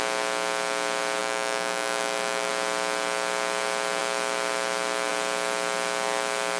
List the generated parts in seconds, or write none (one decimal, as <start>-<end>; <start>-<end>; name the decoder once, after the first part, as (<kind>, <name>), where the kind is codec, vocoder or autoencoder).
1.2-2.5 (autoencoder, DAC-VAE)